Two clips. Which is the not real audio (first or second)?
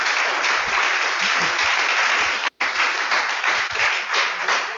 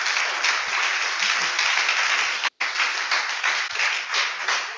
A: first